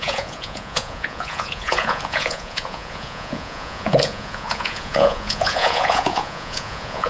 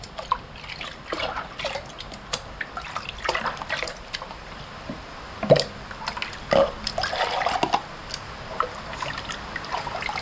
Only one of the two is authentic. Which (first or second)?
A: second